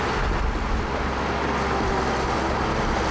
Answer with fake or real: real